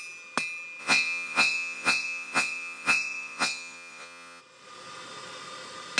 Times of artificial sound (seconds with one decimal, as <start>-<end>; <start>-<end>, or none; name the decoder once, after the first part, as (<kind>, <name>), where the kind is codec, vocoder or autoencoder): 0.8-4.4 (vocoder, Vocos)